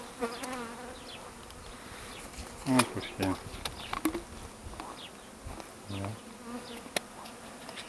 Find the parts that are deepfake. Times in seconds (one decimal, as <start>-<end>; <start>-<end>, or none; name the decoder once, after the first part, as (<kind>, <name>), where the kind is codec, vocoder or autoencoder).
none

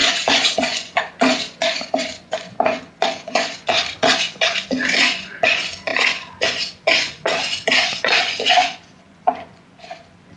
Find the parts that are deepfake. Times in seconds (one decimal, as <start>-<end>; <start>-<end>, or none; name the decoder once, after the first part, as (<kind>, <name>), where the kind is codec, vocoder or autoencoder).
0.0-10.4 (vocoder, Vocos)

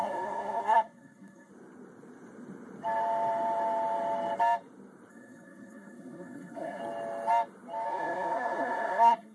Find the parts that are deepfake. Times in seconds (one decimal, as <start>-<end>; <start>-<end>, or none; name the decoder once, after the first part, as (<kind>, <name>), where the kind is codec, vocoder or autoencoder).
0.0-1.5 (codec, SNAC); 5.1-6.8; 7.9-9.3